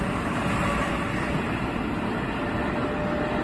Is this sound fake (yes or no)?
no